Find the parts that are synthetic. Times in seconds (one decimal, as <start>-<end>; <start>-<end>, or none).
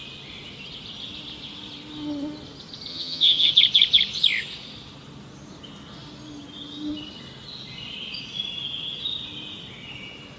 2.9-3.5